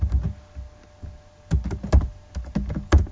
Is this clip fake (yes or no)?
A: no